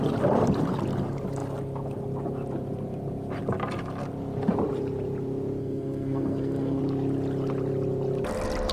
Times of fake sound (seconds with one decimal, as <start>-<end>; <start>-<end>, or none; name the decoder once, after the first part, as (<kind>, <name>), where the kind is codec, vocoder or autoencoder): 5.6-6.8 (codec, SNAC)